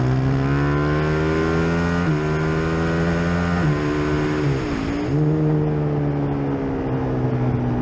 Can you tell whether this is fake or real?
real